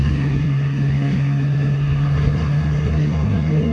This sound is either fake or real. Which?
fake